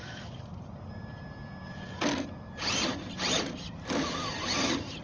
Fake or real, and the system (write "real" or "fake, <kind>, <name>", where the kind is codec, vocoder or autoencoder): real